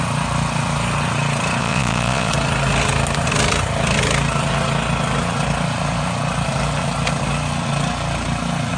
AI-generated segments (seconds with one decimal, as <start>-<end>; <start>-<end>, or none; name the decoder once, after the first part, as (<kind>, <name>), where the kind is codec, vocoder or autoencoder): 1.6-2.3 (vocoder, Vocos)